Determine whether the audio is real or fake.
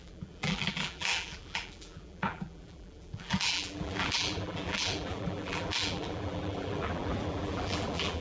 fake